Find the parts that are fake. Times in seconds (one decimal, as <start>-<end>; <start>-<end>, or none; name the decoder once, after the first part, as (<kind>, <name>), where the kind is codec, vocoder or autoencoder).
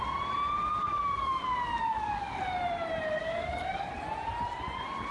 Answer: 0.8-1.4 (codec, DAC); 1.8-2.4; 3.2-3.9